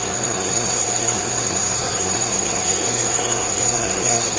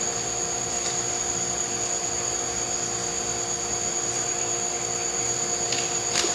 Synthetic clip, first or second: first